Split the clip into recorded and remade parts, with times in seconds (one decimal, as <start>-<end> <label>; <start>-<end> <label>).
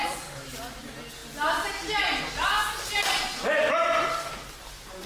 0.0-5.1 recorded